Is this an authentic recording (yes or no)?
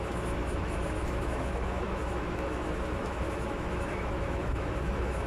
no